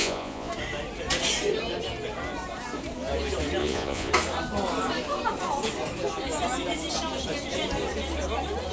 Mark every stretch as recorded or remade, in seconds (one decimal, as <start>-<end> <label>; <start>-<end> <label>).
0.0-0.5 remade; 0.5-3.6 recorded; 3.6-4.1 remade; 4.1-8.7 recorded